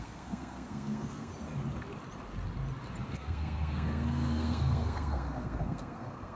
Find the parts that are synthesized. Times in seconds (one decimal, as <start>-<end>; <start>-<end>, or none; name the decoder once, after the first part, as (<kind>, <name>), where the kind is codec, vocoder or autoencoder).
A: 0.0-1.3 (codec, SNAC); 3.1-6.4